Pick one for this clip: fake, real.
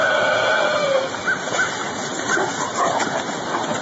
real